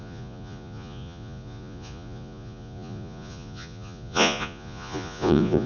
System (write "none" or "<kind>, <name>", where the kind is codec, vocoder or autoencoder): vocoder, Vocos